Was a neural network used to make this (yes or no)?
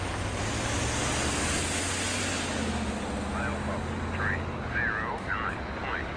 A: no